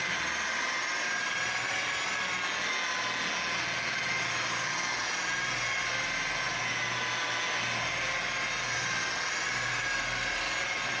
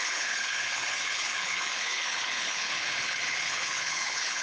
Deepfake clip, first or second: second